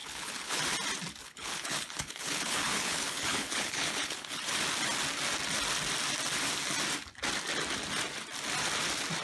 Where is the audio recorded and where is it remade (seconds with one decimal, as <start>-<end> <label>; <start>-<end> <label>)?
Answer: 0.0-0.6 remade; 0.6-1.2 recorded; 1.2-4.4 remade; 4.4-9.2 recorded